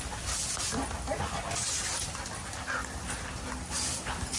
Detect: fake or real real